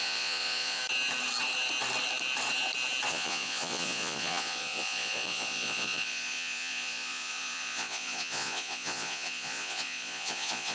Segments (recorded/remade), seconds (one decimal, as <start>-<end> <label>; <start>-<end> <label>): 0.0-0.8 remade; 0.8-3.1 recorded; 3.1-10.7 remade